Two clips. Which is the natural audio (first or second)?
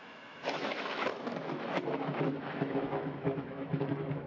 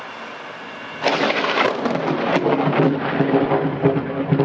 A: second